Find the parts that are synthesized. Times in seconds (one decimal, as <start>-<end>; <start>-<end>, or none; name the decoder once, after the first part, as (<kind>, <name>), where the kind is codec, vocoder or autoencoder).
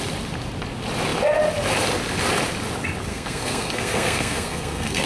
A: 3.1-5.1 (codec, SNAC)